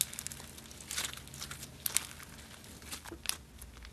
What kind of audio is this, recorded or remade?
recorded